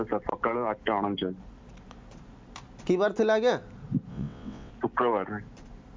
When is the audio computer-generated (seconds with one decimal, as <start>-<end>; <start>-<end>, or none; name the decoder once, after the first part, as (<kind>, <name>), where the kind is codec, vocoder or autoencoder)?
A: 4.1-4.7 (vocoder, WaveNeXt)

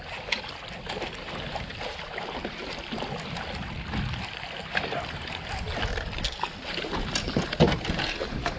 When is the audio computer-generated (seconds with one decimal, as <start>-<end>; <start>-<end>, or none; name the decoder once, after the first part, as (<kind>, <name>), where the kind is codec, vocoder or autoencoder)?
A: none

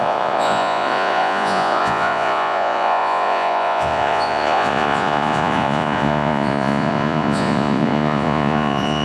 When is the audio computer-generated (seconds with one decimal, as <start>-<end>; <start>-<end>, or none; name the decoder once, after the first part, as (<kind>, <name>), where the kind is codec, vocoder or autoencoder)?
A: 0.0-9.0 (vocoder, Vocos)

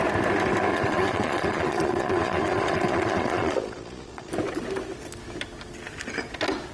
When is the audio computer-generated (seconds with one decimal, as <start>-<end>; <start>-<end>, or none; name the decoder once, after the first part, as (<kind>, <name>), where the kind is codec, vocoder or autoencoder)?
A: 0.7-4.3 (vocoder, Vocos)

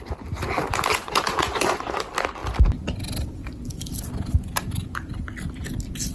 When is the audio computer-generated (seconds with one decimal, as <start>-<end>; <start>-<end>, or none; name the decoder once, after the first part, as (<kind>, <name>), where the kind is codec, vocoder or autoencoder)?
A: 0.9-2.0 (vocoder, Vocos)